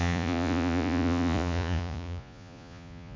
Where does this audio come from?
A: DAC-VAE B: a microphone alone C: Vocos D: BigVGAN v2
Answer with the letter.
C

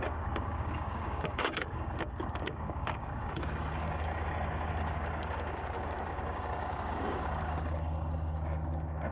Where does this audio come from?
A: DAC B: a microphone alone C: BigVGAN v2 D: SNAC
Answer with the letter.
A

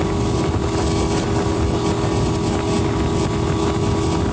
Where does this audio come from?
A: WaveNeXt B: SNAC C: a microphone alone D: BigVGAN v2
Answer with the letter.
C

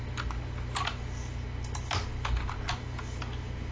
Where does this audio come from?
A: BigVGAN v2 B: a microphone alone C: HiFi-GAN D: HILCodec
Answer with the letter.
B